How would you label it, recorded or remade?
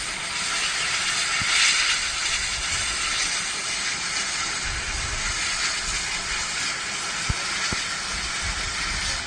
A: recorded